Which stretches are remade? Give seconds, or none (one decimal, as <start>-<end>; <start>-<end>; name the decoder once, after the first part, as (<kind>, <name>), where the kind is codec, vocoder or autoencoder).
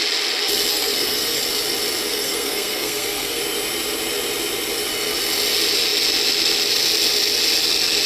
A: 0.7-1.4 (codec, SNAC); 2.1-3.4